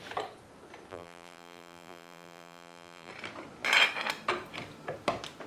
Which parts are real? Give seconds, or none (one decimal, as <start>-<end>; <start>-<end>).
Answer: 0.0-0.9; 3.1-5.5